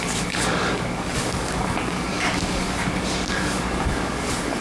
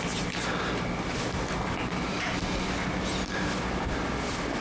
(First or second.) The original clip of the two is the second